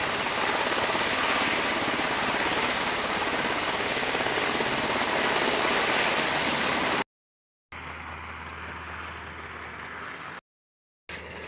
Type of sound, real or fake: real